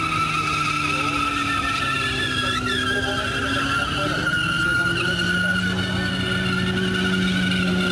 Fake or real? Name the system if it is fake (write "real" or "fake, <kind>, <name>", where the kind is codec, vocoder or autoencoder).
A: real